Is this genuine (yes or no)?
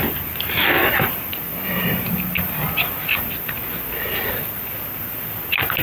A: yes